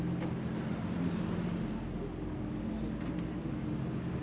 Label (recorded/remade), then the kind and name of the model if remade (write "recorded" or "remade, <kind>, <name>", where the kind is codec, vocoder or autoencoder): recorded